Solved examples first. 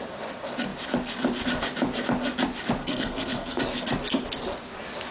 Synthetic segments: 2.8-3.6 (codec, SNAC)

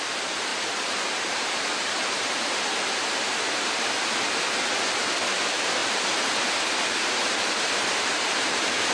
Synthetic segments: 0.5-3.9 (vocoder, BigVGAN v2); 5.8-8.9

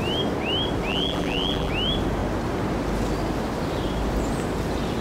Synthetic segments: 0.9-1.7 (vocoder, BigVGAN v2)

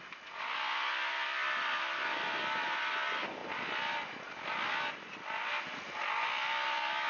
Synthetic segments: none

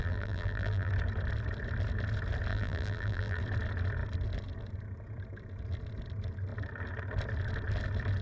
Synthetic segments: 0.0-0.9 (vocoder, BigVGAN v2); 2.5-3.4

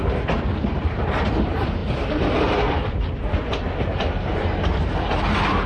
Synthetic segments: 0.0-5.7 (vocoder, BigVGAN v2)